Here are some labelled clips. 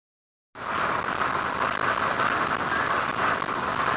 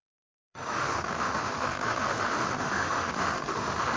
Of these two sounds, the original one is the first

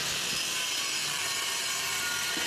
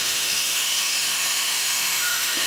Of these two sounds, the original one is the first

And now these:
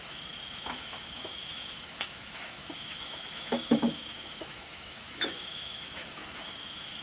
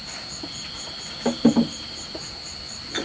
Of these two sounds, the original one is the second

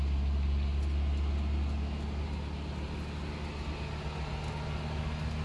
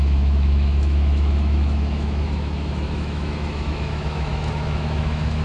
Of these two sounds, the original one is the first